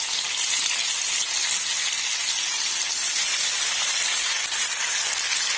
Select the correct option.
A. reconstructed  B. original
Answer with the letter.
B